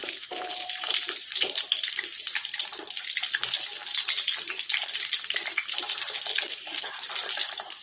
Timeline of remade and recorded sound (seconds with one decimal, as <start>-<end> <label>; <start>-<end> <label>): 0.0-2.6 remade; 2.6-7.8 recorded